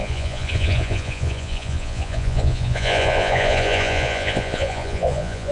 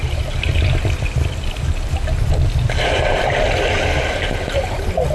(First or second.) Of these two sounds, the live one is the second